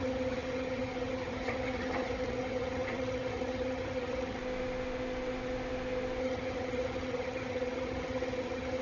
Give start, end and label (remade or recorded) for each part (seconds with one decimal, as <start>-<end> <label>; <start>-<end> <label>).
0.0-4.4 remade; 4.4-6.2 recorded; 6.2-8.8 remade